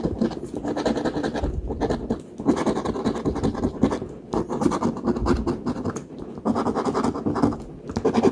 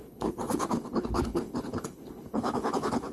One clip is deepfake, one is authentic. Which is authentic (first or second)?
first